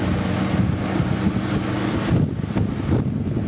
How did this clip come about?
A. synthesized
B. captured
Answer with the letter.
B